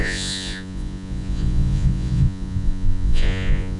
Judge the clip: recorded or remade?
remade